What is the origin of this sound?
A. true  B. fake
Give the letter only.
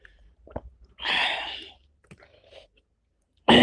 B